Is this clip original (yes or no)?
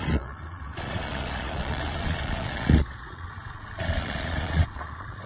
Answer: no